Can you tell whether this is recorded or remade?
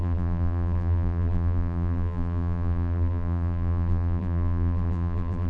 remade